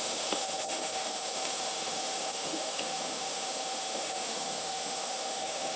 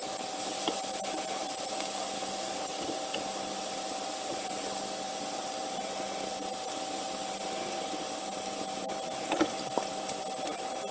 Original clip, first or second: second